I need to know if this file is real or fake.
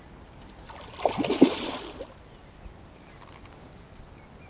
real